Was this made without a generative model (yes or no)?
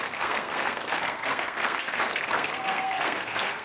no